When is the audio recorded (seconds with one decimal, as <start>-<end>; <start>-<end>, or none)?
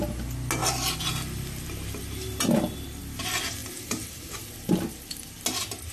0.0-3.6; 4.3-5.9